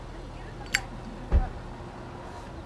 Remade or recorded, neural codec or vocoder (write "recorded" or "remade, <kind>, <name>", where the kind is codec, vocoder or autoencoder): recorded